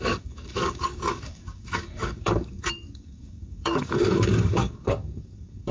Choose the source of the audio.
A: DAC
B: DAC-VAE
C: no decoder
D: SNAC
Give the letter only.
A